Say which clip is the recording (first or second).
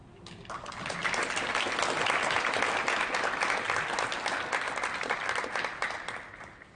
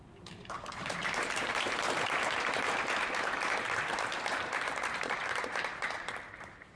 first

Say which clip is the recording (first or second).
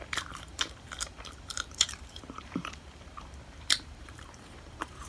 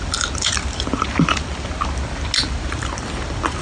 second